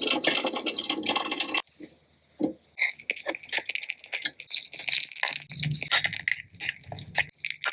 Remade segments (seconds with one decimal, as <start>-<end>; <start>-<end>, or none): none